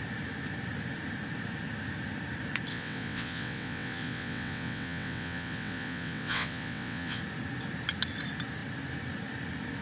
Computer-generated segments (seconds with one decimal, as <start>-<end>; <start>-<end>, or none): 2.7-7.2